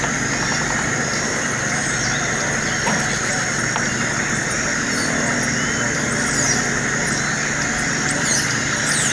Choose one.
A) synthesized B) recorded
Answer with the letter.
B